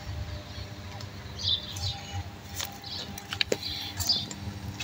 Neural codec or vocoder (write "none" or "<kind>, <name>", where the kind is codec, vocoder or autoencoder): none